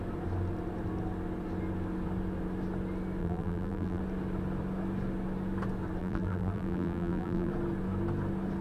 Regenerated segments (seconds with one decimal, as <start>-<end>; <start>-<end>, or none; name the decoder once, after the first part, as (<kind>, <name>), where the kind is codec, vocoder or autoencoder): 3.2-4.0 (vocoder, BigVGAN v2); 6.0-7.5